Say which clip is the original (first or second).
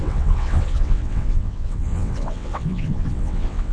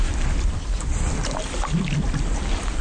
second